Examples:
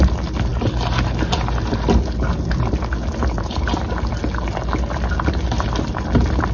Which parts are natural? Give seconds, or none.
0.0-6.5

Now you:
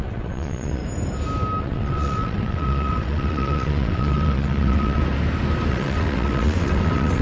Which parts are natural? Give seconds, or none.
0.8-1.6; 5.0-5.7

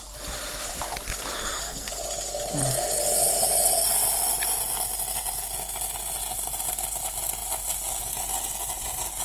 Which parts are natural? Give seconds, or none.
0.0-1.3; 1.9-9.2

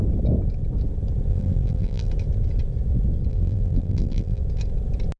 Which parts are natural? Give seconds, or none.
0.0-1.3; 2.1-3.3; 4.4-5.2

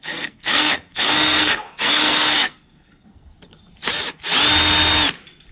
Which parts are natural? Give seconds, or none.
3.3-5.5

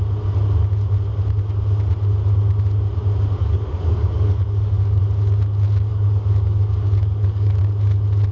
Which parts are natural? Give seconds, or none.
0.0-3.4; 5.0-5.9; 7.6-8.3

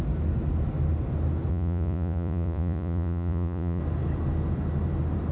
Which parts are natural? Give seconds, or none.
0.0-1.5; 3.8-5.3

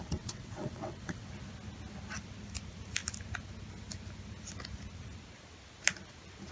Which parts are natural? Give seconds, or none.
1.3-6.5